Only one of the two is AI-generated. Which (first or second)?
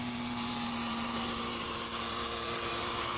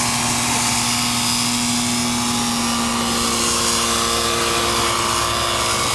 first